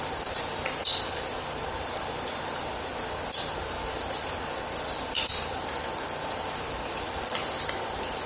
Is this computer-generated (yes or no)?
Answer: yes